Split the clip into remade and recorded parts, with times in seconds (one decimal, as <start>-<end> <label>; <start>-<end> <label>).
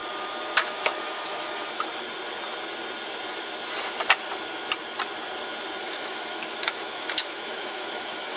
0.0-0.6 recorded; 0.6-1.9 remade; 1.9-5.8 recorded; 5.8-8.4 remade